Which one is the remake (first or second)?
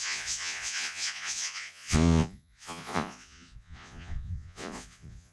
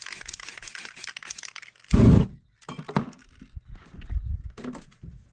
first